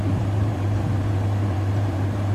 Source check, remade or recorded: remade